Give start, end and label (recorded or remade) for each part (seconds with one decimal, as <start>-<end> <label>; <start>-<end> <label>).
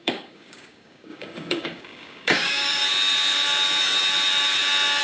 0.0-2.8 remade; 2.8-5.0 recorded